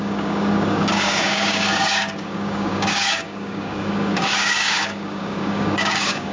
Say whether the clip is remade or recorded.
remade